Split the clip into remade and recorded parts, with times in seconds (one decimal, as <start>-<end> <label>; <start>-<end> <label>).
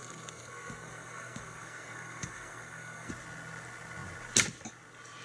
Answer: 0.0-3.1 remade; 3.1-5.2 recorded